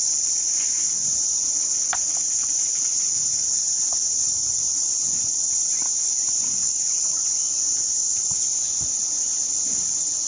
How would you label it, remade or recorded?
recorded